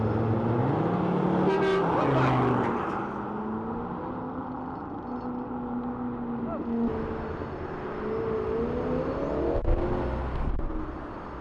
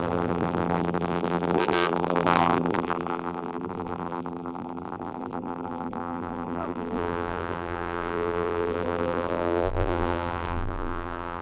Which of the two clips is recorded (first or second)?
first